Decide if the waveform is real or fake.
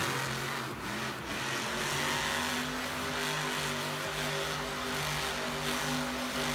real